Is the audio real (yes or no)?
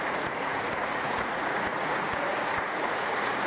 no